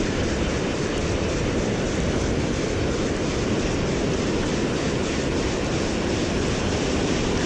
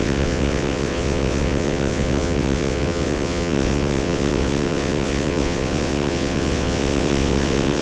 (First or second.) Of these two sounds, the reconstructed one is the second